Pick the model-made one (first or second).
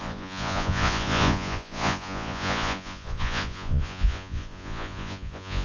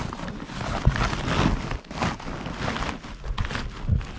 first